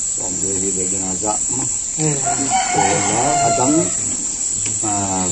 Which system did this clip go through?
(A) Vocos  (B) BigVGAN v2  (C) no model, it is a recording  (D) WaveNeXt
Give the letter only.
C